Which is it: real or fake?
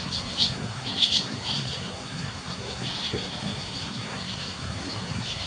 fake